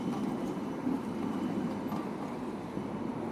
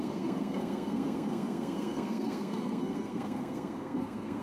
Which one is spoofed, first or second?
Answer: second